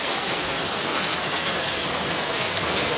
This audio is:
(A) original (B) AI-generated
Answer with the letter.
B